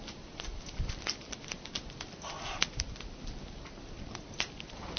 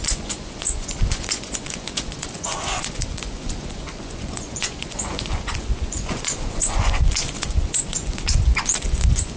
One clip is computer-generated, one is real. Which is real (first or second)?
first